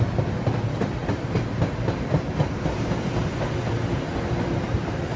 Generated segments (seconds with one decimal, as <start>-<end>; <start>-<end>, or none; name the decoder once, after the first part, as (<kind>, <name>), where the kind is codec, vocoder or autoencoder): none